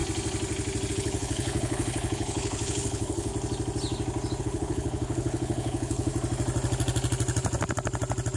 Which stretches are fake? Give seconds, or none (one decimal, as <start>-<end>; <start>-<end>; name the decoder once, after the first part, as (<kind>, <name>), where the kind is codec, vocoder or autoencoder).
0.9-3.3 (codec, HILCodec); 4.4-6.1